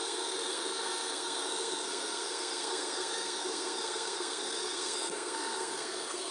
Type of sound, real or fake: fake